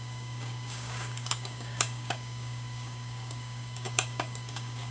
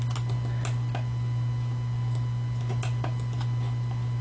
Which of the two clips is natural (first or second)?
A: second